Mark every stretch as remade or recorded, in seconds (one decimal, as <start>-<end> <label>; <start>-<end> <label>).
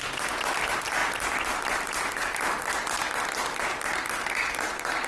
0.0-5.1 recorded